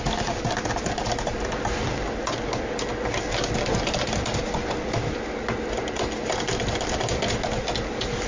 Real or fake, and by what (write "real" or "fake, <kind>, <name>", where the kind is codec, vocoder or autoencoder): real